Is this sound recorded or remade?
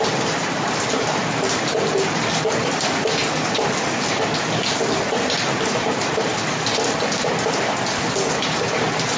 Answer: recorded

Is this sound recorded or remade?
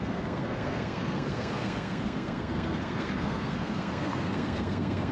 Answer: remade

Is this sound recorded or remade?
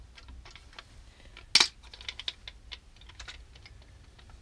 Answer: recorded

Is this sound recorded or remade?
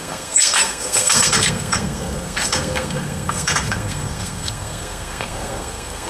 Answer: remade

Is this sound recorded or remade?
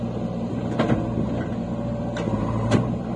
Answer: recorded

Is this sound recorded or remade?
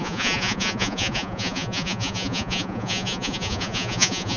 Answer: remade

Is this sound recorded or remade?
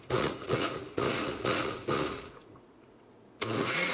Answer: remade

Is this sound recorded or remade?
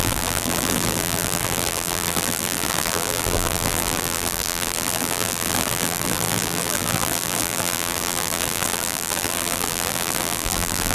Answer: remade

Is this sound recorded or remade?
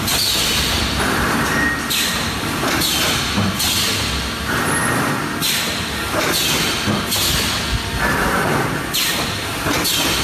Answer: recorded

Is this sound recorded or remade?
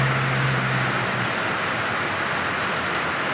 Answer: recorded